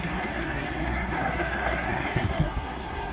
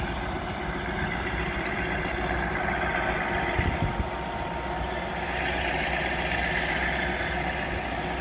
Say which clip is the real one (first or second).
second